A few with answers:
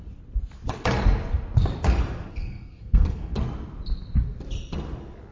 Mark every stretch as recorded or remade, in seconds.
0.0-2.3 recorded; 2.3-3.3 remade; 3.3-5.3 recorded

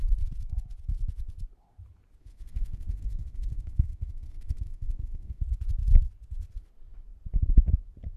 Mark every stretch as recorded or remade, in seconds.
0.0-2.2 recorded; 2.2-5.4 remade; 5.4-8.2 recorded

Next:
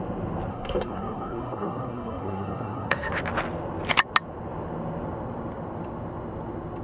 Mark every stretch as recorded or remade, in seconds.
0.0-0.5 recorded; 0.5-3.1 remade; 3.1-6.8 recorded

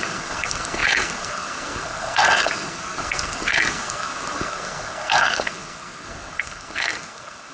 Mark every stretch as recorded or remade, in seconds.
0.0-7.5 remade